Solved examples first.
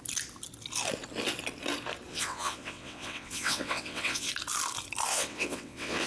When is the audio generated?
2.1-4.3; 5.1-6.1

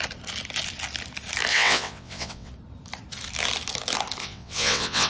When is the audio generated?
1.5-2.5; 4.2-5.1

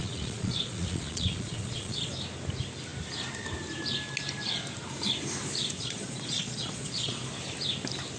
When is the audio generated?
0.0-2.1; 5.8-7.3

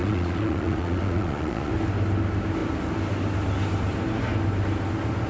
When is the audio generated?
0.0-1.7

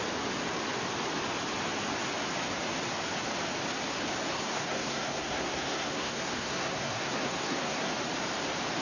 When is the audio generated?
4.3-7.9

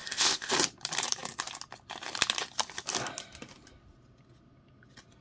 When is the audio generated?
0.0-0.5